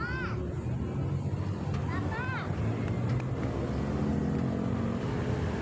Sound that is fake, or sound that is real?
real